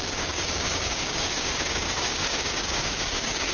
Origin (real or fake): fake